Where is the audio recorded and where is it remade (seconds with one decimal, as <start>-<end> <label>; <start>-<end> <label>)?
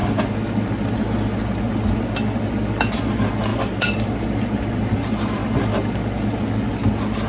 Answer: 0.0-7.3 recorded